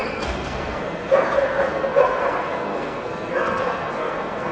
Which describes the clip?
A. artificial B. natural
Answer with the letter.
A